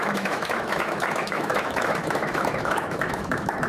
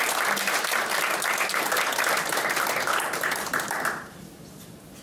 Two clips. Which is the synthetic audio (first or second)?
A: first